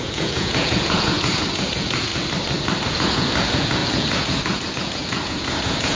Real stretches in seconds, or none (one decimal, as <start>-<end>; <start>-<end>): 2.1-2.9